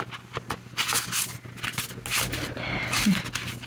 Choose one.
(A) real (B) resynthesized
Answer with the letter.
A